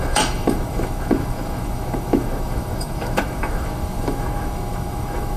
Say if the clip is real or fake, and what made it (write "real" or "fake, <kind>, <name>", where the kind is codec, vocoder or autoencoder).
fake, autoencoder, DAC-VAE